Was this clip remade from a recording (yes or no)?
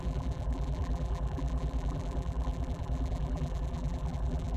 yes